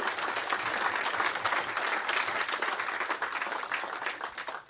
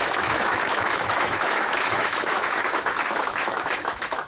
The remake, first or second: second